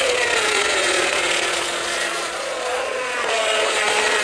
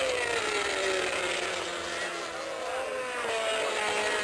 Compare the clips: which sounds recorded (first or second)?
second